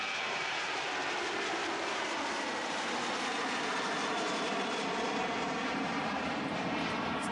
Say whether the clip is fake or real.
fake